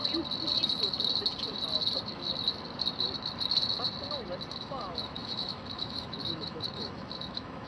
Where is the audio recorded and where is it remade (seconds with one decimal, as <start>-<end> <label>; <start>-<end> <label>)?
0.0-4.5 recorded; 4.5-7.7 remade